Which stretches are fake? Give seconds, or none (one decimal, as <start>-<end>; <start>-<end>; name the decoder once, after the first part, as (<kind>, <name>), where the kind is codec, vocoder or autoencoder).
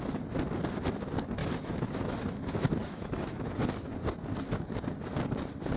1.4-3.6 (autoencoder, DAC-VAE)